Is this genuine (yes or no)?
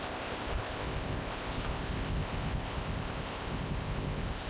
no